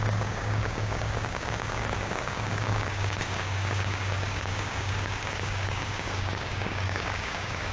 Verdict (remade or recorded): remade